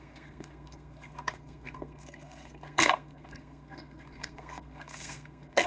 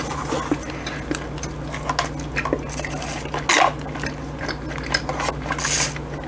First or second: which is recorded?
second